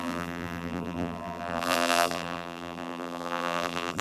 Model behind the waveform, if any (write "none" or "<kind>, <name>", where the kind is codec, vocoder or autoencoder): vocoder, BigVGAN v2